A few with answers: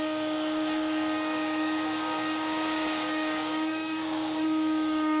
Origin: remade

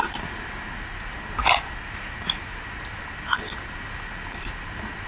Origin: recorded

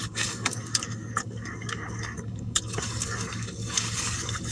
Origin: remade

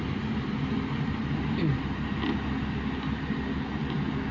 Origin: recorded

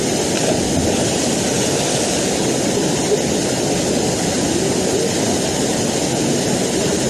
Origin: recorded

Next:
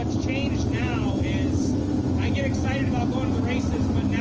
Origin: recorded